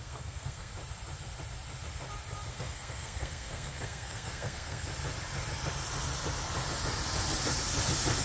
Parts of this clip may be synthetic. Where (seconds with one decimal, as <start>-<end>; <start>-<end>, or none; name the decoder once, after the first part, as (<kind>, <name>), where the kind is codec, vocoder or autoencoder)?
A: 0.0-0.7 (codec, SNAC); 2.5-4.9